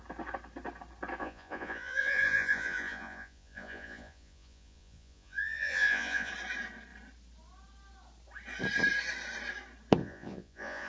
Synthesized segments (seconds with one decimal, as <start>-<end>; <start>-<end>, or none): 1.2-6.3; 10.0-10.9